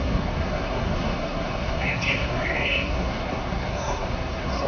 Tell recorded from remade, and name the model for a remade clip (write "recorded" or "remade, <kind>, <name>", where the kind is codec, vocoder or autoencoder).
remade, codec, SNAC